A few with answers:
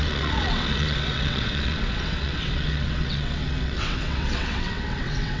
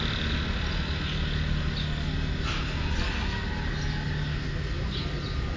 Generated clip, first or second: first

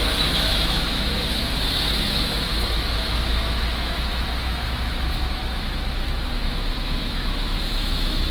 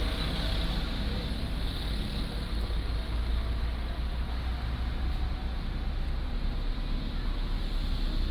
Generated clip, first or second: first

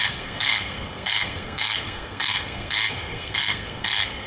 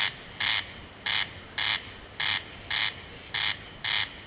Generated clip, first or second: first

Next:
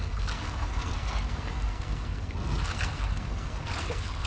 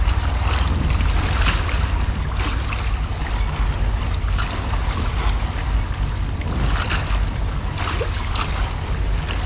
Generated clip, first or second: first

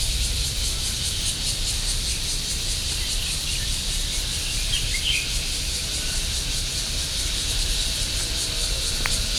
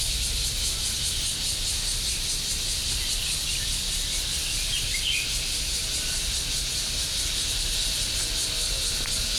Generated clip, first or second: first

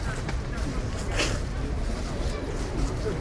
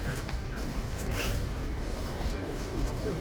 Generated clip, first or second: second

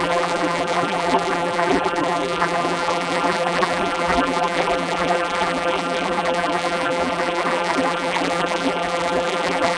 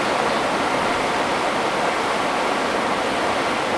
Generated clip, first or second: first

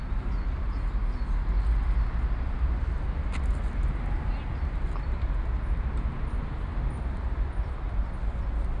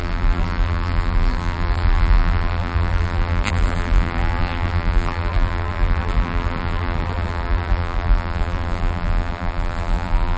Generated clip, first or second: second